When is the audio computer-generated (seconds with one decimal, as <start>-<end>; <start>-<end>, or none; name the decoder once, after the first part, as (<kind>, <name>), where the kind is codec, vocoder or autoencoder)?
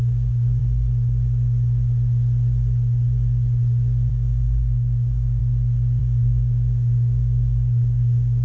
0.0-0.6 (codec, DAC); 4.1-5.4; 6.0-8.4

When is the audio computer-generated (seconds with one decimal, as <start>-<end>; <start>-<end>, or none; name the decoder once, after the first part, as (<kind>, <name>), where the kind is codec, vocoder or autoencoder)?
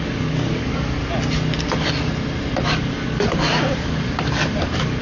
0.0-1.0 (codec, DAC); 2.7-5.0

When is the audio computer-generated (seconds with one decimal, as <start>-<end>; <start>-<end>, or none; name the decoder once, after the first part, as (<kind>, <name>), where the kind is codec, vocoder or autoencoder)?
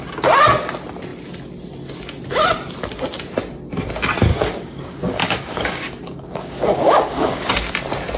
4.3-7.5 (codec, DAC)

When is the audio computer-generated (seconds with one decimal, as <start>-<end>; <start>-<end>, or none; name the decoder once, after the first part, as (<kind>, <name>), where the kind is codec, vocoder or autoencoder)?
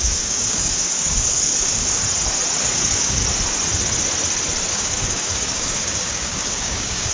0.0-2.0 (codec, DAC); 2.6-3.2; 4.7-7.1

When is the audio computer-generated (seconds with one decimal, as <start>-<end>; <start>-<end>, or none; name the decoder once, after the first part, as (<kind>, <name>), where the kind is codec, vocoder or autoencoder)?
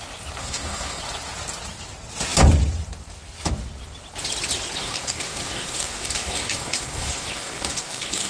0.4-1.0 (codec, DAC); 4.8-8.3